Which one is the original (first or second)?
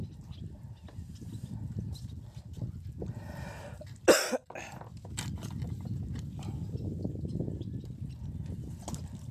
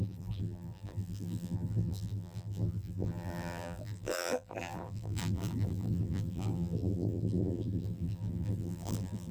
first